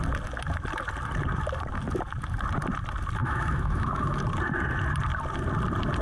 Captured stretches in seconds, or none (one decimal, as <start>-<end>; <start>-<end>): 0.0-3.2; 4.2-6.0